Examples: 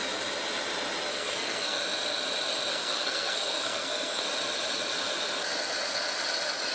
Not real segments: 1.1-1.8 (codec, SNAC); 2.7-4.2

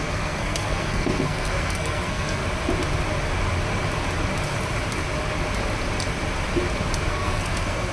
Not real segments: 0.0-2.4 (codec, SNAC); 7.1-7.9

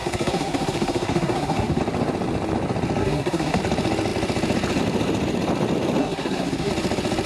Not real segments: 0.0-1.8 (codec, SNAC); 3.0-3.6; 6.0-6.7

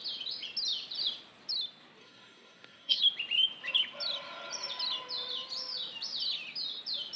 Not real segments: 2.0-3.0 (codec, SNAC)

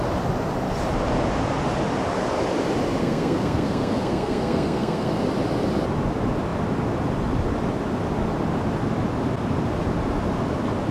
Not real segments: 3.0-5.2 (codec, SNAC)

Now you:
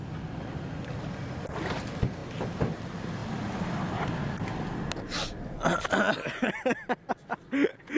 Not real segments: none

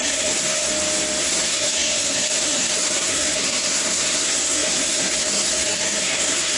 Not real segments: 0.0-0.7 (codec, SNAC); 1.2-6.6

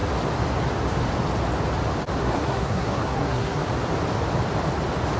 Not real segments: 2.2-3.6 (codec, SNAC)